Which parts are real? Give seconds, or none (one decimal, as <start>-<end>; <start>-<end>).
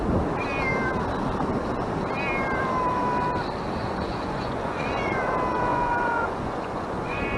0.0-3.8; 5.3-5.7